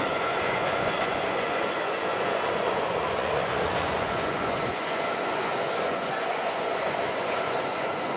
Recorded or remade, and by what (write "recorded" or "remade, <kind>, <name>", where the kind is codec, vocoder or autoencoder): remade, vocoder, Vocos